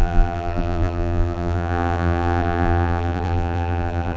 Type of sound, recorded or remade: remade